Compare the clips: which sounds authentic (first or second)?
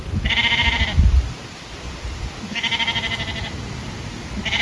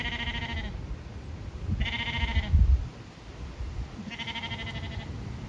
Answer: second